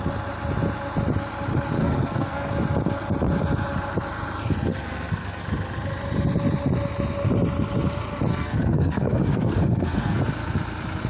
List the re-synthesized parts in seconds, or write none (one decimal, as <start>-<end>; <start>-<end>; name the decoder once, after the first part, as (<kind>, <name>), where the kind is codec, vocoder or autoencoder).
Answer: 1.8-2.5 (codec, SNAC); 4.8-5.4; 8.3-10.2